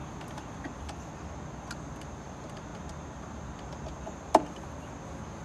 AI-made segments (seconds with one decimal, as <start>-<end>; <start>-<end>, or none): none